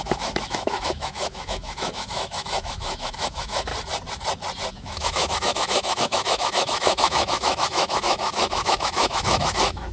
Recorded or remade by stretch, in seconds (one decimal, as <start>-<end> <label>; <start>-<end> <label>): 0.0-3.7 remade; 3.7-4.7 recorded; 4.7-9.9 remade